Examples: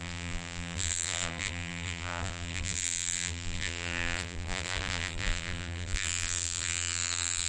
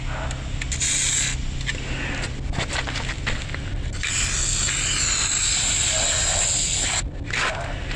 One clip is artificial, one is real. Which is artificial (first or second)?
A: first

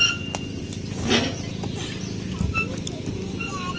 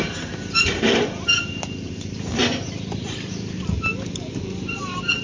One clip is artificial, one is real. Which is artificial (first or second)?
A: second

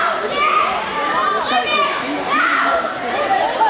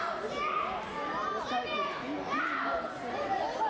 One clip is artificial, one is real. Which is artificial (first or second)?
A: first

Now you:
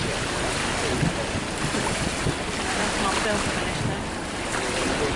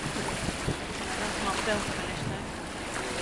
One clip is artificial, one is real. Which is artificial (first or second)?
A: first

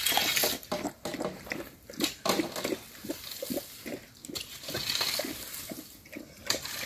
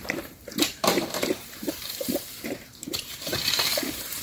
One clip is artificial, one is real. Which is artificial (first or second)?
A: second